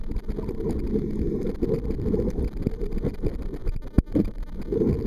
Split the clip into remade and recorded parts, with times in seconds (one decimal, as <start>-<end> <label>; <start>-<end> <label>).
0.0-3.1 recorded; 3.1-3.6 remade; 3.6-5.1 recorded